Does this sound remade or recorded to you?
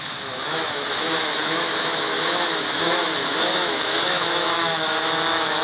remade